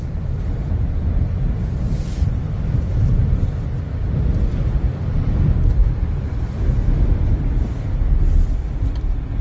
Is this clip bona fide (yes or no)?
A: yes